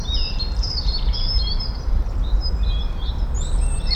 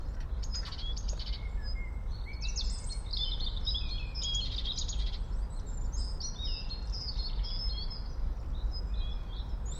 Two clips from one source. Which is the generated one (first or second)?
first